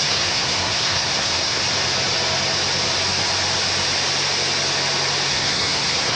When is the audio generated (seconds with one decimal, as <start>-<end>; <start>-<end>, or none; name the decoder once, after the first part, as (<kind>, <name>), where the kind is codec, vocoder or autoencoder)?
0.0-1.6 (codec, SNAC); 5.3-6.2